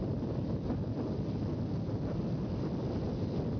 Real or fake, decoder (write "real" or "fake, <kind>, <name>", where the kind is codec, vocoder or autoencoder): real